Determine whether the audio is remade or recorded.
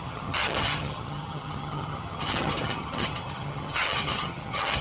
remade